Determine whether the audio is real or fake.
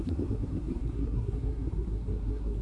fake